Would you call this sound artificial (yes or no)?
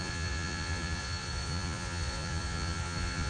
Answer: yes